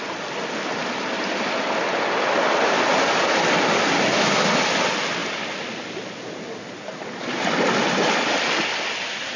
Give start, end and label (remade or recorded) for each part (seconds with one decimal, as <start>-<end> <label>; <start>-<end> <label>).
0.0-9.4 recorded